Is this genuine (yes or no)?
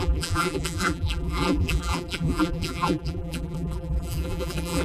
no